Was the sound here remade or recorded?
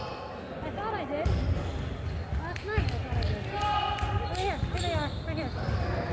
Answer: recorded